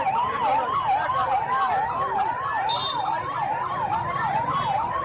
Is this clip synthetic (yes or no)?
no